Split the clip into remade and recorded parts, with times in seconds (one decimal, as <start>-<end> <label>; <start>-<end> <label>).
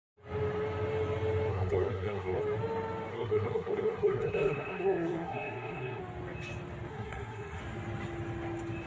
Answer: 0.0-1.5 recorded; 1.5-2.4 remade; 2.4-3.1 recorded; 3.1-6.0 remade; 6.0-6.9 recorded; 6.9-7.6 remade; 7.6-8.9 recorded